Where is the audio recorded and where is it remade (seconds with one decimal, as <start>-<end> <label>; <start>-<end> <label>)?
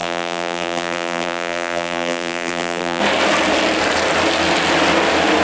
0.0-3.0 remade; 3.0-5.4 recorded